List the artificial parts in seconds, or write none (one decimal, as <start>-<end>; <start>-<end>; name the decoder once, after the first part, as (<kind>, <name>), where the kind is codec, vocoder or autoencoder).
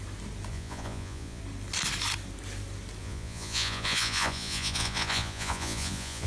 0.5-1.4 (vocoder, Vocos); 3.0-6.3